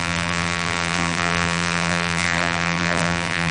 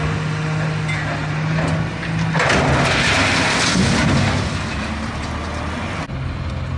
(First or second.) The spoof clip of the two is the first